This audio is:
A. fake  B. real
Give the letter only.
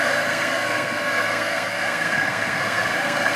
A